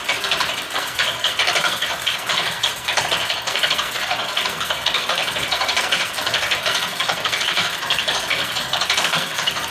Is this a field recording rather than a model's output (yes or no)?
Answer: no